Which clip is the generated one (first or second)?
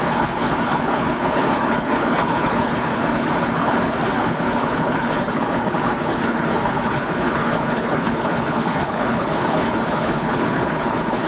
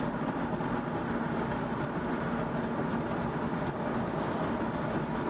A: first